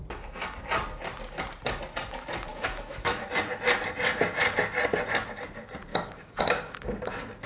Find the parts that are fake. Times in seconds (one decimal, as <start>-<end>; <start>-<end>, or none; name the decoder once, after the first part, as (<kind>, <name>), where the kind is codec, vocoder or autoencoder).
2.5-3.3 (autoencoder, DAC-VAE); 5.9-6.4